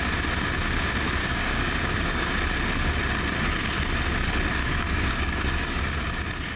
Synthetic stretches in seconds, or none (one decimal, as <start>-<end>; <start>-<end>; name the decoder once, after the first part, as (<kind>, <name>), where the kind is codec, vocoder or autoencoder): 1.2-2.3 (codec, DAC); 4.6-5.8